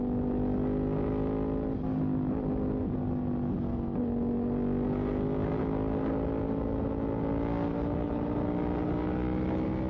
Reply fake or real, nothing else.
real